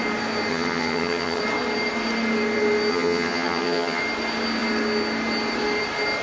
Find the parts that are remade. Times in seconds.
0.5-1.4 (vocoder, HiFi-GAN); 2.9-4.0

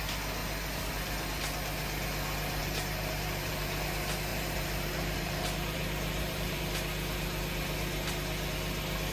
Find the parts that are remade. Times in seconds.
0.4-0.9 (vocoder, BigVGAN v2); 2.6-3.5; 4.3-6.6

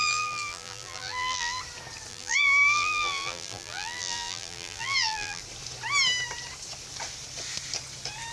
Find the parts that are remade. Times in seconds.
0.0-1.6 (vocoder, BigVGAN v2); 2.1-5.4

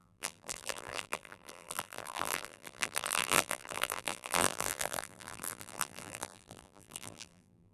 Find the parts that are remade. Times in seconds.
0.0-7.7 (vocoder, BigVGAN v2)

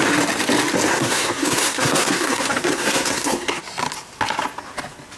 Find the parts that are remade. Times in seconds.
0.9-3.6 (codec, SNAC)

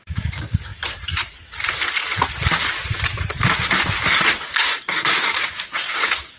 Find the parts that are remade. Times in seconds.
0.0-0.7 (codec, DAC); 4.5-6.4